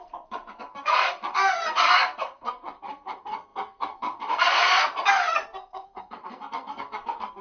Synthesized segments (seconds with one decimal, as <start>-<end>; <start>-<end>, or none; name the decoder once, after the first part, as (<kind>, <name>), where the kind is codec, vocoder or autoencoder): 0.0-7.4 (codec, SNAC)